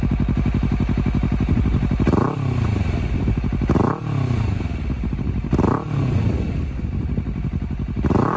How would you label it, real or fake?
real